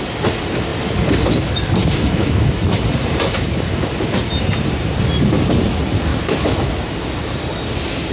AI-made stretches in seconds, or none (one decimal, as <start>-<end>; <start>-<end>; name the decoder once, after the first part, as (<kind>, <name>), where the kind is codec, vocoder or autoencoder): 1.8-2.8 (autoencoder, DAC-VAE); 6.1-6.7